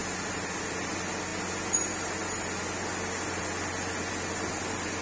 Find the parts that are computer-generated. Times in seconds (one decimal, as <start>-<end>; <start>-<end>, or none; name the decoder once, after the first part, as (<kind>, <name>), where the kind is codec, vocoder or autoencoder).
none